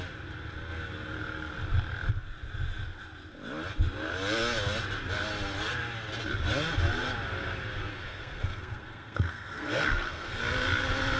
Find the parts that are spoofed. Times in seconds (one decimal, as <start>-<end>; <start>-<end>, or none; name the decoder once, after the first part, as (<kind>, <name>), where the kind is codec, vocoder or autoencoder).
7.9-10.4 (codec, SNAC)